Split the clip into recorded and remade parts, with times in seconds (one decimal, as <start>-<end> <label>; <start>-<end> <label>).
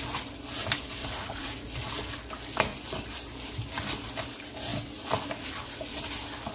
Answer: 0.0-1.0 recorded; 1.0-1.9 remade; 1.9-6.5 recorded